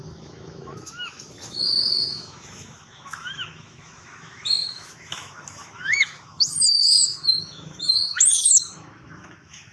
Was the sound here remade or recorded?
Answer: remade